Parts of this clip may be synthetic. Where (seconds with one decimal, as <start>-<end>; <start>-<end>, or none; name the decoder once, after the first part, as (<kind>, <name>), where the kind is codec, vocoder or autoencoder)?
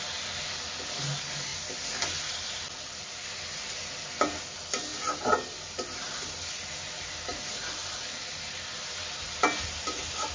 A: none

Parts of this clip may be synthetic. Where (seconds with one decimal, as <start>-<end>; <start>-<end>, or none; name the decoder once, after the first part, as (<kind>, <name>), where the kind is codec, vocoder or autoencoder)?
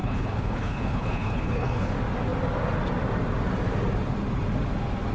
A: 0.0-1.9 (codec, HILCodec)